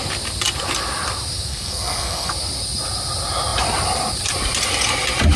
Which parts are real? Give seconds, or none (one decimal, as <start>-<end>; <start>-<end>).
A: 0.0-1.5; 2.3-5.4